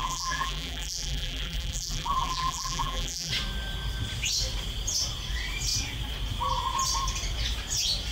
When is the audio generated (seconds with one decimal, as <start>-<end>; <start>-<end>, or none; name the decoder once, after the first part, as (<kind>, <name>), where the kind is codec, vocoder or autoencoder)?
0.0-3.3 (vocoder, BigVGAN v2)